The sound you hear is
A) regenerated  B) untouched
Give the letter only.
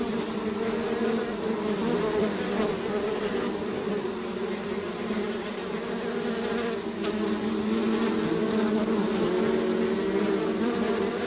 B